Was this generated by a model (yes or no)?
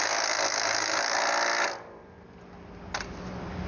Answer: no